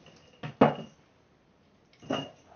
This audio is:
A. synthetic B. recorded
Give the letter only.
B